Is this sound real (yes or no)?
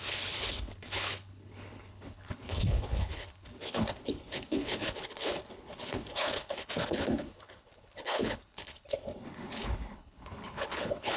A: no